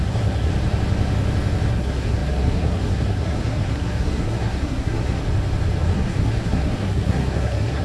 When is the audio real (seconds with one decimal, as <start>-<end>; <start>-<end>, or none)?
0.5-1.7; 5.2-5.8